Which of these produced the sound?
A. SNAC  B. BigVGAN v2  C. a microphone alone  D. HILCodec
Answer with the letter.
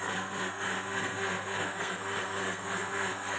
A